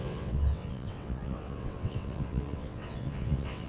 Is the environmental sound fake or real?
fake